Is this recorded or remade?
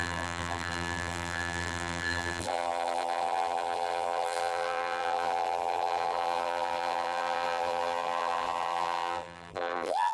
remade